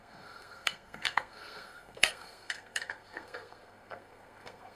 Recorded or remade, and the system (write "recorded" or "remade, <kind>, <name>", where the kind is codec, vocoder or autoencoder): remade, codec, SNAC